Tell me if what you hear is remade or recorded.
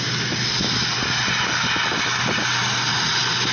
recorded